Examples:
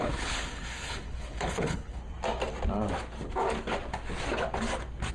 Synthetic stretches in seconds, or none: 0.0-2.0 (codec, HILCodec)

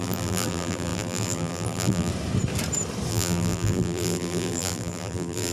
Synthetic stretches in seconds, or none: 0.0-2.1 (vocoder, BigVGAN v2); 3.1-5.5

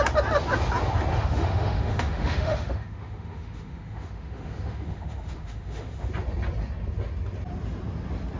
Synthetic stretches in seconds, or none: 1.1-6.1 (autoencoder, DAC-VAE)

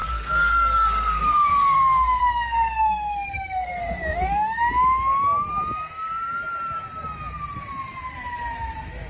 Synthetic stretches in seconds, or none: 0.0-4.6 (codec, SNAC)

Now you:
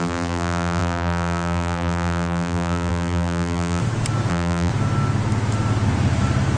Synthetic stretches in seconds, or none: 0.0-3.8 (vocoder, BigVGAN v2); 4.3-4.7

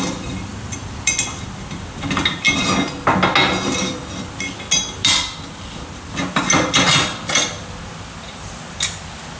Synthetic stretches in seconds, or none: none

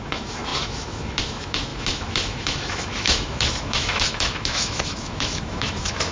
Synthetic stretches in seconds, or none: 0.0-6.1 (autoencoder, DAC-VAE)